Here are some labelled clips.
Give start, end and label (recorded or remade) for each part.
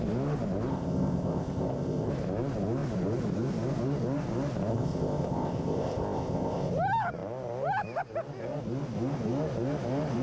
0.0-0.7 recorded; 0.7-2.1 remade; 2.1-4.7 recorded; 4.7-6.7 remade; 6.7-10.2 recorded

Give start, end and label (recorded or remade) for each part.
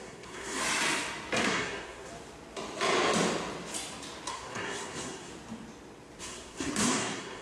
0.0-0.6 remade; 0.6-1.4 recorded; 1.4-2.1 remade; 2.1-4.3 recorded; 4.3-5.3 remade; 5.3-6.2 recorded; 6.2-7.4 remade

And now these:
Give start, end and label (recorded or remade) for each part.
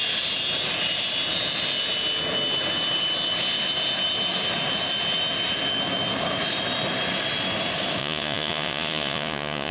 0.0-8.0 recorded; 8.0-9.7 remade